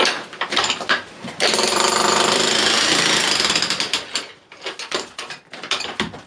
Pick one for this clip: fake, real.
fake